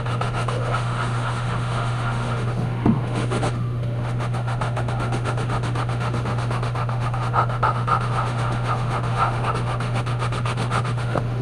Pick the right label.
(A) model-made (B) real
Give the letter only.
A